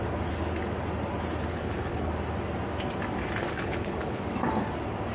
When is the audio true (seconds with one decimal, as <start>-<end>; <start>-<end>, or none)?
0.0-1.5; 2.1-3.4; 4.2-5.1